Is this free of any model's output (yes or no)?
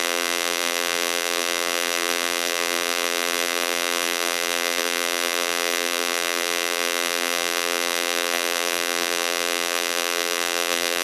no